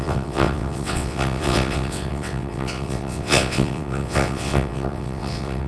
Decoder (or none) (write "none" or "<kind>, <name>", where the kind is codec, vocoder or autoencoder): vocoder, WaveNeXt